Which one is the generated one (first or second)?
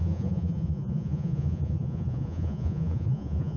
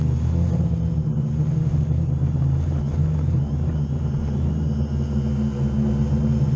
first